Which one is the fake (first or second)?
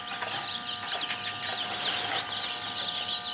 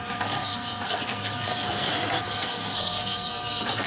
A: second